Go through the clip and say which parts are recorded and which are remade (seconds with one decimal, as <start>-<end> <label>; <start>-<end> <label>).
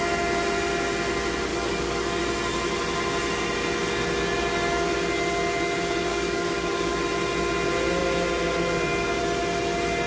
0.0-1.5 recorded; 1.5-2.2 remade; 2.2-6.1 recorded; 6.1-7.0 remade; 7.0-10.1 recorded